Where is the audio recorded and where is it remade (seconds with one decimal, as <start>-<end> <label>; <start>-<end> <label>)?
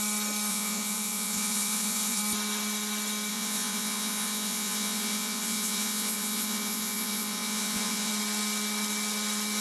0.0-0.5 recorded; 0.5-2.2 remade; 2.2-3.3 recorded; 3.3-8.1 remade; 8.1-9.6 recorded